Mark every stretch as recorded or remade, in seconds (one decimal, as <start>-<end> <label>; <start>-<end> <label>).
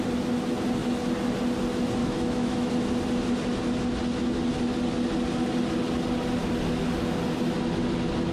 0.0-2.0 recorded; 2.0-2.7 remade; 2.7-8.3 recorded